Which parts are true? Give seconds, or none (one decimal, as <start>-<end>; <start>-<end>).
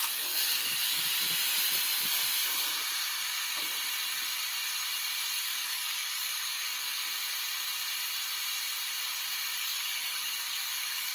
1.1-5.4; 7.1-9.6